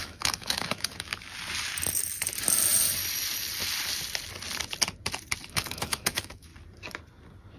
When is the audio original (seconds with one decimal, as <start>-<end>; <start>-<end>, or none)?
1.1-5.5; 6.5-7.6

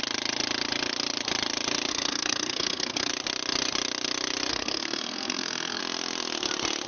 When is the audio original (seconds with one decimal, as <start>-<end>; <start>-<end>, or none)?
0.0-1.9; 3.1-4.5; 5.8-6.9

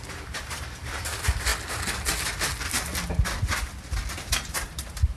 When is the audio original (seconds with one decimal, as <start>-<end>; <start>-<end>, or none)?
1.5-4.3

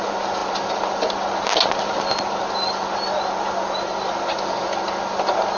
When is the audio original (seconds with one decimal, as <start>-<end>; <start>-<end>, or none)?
0.0-5.6

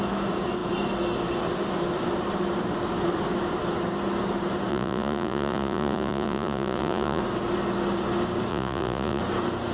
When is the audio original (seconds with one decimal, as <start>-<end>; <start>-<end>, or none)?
0.0-4.7; 7.2-8.5; 9.2-9.7

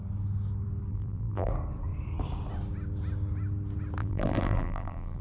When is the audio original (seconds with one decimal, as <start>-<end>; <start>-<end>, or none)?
0.0-0.9; 1.5-4.0